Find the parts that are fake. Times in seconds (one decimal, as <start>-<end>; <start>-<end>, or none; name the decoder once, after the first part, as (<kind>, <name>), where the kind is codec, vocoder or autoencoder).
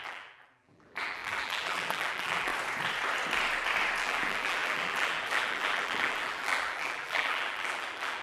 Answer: 0.0-2.5 (vocoder, BigVGAN v2); 4.0-8.2